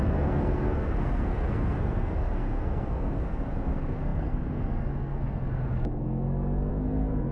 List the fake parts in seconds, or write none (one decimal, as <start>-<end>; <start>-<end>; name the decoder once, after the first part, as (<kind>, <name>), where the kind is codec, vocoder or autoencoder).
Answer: 0.0-7.3 (codec, SNAC)